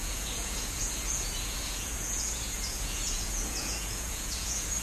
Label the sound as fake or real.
fake